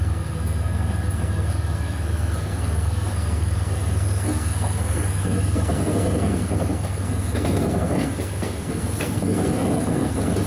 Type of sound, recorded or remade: remade